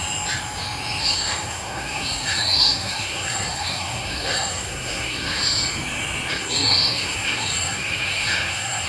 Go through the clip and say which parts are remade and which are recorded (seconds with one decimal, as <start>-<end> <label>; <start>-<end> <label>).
0.0-1.0 recorded; 1.0-5.4 remade; 5.4-6.3 recorded; 6.3-8.9 remade